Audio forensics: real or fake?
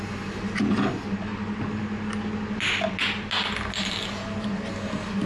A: real